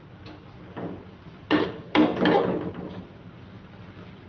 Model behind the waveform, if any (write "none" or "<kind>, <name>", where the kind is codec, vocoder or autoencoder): none